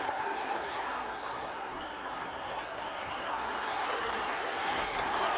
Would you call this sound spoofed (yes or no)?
yes